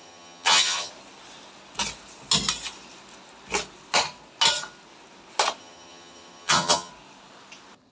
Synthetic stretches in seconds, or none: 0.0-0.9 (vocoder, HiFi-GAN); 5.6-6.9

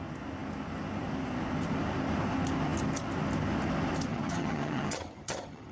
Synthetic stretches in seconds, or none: 4.1-5.7 (vocoder, HiFi-GAN)

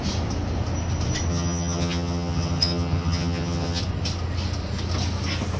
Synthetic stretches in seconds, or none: 1.3-3.8 (vocoder, HiFi-GAN)

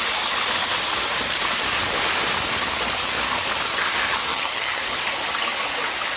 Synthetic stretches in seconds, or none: 4.3-4.8 (vocoder, HiFi-GAN)

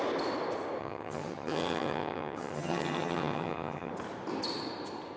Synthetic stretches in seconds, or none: 0.8-3.9 (vocoder, HiFi-GAN)

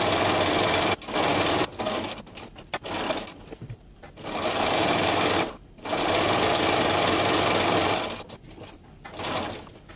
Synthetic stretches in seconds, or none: none

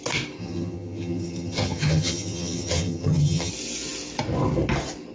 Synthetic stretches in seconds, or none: 0.4-3.5 (vocoder, HiFi-GAN)

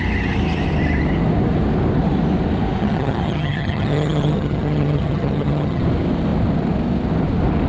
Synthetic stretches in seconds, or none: 2.8-5.8 (vocoder, HiFi-GAN)